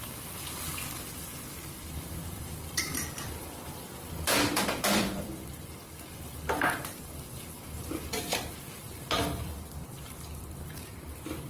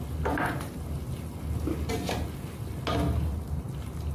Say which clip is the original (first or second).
second